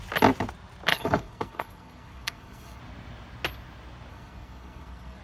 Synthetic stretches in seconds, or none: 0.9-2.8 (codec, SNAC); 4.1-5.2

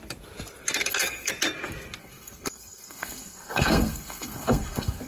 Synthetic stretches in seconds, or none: 0.8-1.3 (codec, SNAC); 2.0-5.1